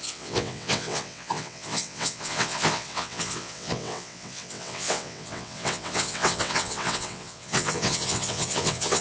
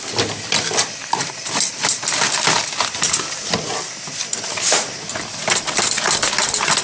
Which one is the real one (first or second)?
second